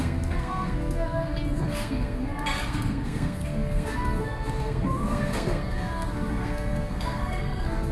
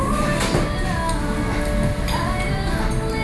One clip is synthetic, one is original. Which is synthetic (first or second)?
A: first